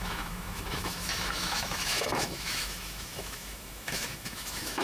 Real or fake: fake